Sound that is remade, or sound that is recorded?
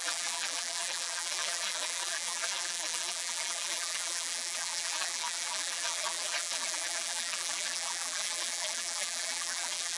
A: remade